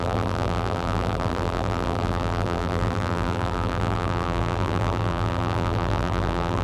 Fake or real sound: fake